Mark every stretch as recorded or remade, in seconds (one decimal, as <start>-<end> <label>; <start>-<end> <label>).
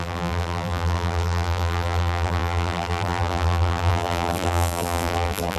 0.0-5.6 remade